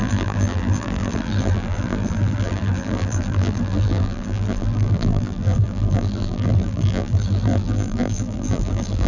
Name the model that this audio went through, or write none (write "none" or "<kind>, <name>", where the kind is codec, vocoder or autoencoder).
vocoder, BigVGAN v2